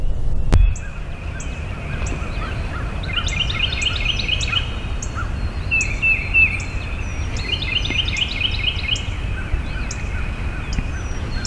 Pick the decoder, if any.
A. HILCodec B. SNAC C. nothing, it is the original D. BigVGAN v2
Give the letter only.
C